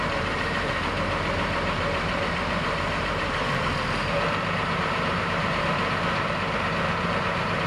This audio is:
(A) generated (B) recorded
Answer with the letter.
A